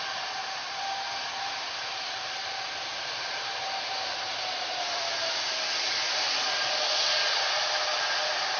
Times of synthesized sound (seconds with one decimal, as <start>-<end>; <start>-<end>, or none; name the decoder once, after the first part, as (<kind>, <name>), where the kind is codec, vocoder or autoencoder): 0.4-5.3 (vocoder, BigVGAN v2)